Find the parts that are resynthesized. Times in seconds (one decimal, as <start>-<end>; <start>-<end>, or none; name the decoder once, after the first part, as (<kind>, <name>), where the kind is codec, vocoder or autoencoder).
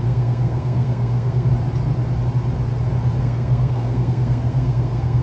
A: 0.0-1.5 (codec, SNAC); 3.2-5.2